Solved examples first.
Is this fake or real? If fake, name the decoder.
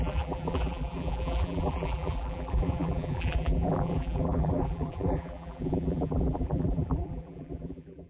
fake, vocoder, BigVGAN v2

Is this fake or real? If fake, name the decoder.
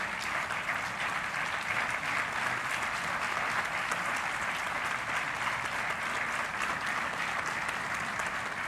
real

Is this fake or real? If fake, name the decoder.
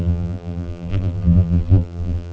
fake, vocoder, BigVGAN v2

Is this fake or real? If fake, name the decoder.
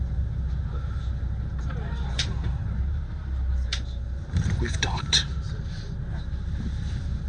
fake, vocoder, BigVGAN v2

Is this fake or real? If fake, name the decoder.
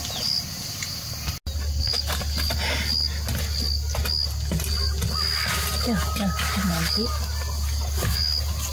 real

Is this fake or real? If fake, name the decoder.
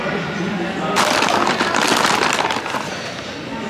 real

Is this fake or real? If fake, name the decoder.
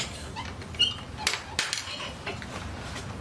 real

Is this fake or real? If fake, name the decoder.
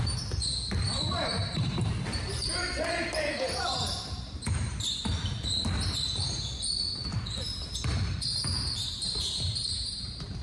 fake, vocoder, BigVGAN v2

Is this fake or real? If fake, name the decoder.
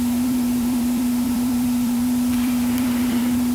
fake, vocoder, BigVGAN v2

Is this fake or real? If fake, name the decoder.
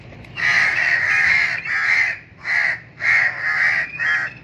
fake, vocoder, BigVGAN v2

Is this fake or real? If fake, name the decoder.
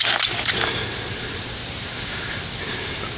real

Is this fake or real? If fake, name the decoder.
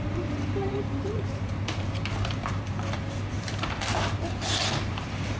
fake, vocoder, BigVGAN v2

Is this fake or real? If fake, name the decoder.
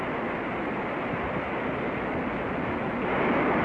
real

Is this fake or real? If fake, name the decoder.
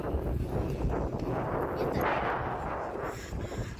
real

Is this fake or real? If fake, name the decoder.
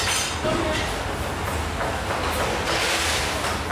real